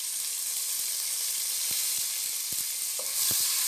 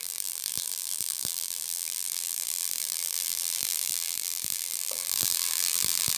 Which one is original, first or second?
first